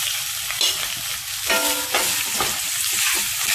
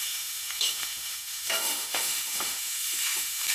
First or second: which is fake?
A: second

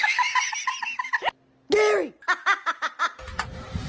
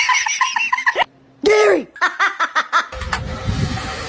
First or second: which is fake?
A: second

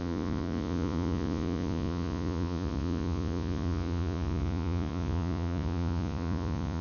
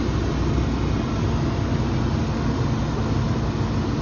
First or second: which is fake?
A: first